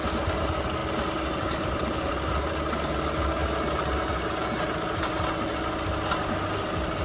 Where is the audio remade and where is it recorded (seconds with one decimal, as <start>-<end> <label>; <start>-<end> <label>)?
0.0-7.0 recorded